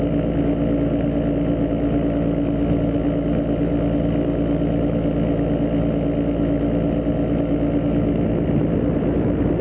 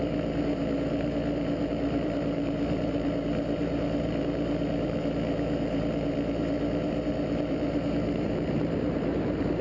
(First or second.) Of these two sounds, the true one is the first